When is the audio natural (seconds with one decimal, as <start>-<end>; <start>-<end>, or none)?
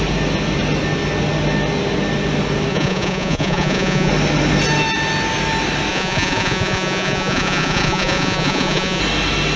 0.0-2.7; 4.1-5.9; 9.0-9.6